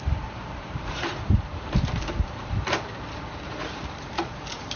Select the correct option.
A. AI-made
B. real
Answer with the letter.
A